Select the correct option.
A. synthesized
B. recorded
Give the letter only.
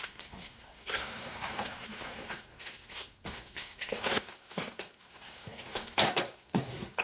A